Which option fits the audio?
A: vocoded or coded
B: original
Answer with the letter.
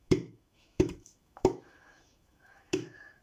A